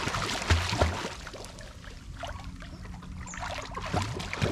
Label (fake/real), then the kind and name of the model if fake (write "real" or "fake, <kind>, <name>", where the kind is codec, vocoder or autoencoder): real